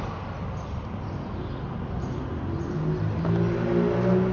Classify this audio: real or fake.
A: real